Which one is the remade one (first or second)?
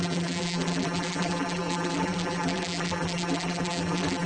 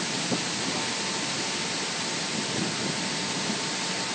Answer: first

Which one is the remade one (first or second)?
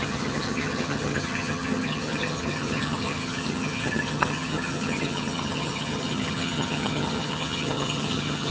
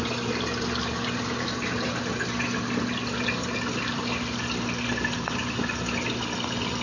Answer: first